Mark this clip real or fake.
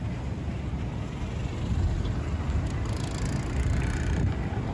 real